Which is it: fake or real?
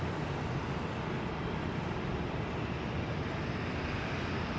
real